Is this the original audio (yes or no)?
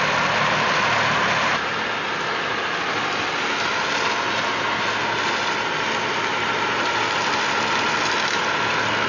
yes